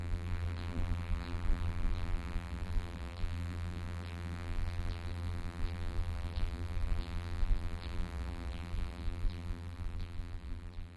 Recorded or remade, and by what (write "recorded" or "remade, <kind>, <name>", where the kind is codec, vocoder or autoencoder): remade, vocoder, BigVGAN v2